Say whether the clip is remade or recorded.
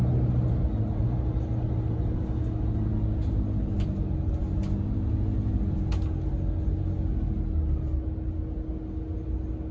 recorded